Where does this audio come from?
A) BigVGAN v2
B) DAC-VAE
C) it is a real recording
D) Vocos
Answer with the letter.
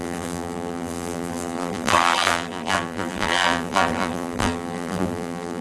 A